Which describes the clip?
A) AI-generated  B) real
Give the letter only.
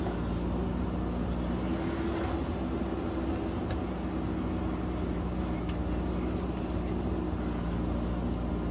B